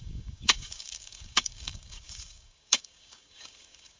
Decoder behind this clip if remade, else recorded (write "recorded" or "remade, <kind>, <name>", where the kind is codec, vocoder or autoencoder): remade, codec, DAC